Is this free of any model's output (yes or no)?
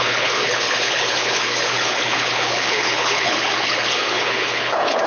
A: no